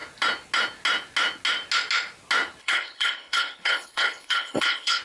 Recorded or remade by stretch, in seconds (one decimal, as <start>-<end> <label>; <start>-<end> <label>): 0.0-2.6 recorded; 2.6-5.0 remade